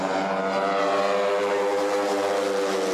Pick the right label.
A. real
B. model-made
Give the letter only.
A